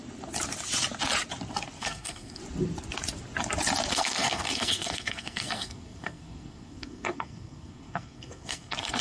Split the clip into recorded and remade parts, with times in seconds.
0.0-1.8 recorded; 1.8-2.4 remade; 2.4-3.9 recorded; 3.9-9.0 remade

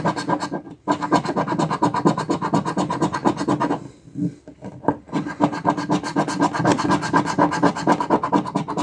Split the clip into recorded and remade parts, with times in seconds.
0.0-8.8 recorded